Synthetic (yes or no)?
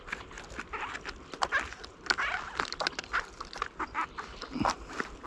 no